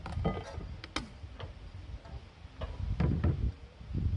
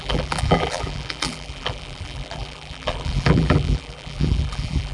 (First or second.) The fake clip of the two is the second